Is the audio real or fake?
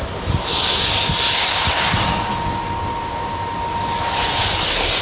real